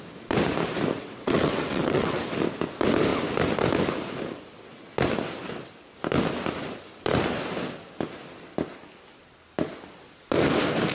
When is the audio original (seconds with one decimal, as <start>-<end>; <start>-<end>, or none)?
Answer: 0.0-1.0; 2.2-10.9